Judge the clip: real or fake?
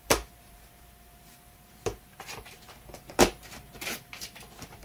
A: fake